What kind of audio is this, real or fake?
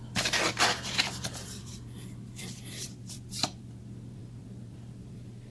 fake